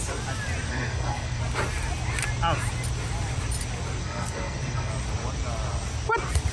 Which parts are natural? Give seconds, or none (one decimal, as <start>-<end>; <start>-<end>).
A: 0.0-0.7; 1.4-4.0; 4.9-6.5